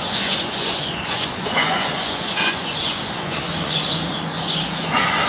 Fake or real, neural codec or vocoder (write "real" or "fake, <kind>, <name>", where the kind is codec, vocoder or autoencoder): fake, vocoder, Vocos